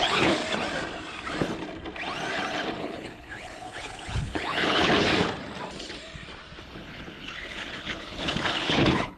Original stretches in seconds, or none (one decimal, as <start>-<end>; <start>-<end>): 0.4-2.8; 5.1-6.6